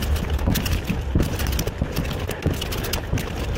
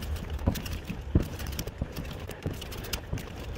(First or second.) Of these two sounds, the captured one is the first